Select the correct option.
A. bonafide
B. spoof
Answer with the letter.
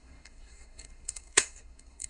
B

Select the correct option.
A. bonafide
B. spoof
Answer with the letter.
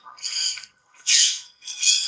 B